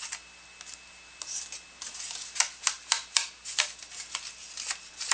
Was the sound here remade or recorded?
recorded